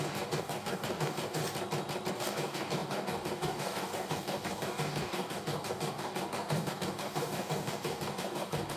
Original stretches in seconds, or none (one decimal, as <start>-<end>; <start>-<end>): 1.4-2.1